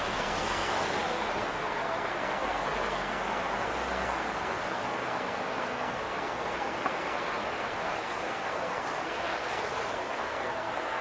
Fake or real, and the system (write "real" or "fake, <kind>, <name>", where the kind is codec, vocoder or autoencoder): fake, codec, SNAC